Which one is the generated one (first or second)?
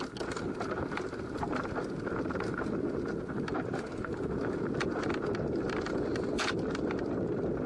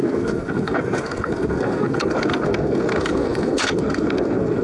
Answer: second